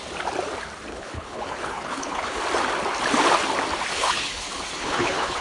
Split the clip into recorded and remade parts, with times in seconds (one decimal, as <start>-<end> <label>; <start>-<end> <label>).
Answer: 0.0-0.9 recorded; 0.9-2.4 remade; 2.4-3.9 recorded; 3.9-5.4 remade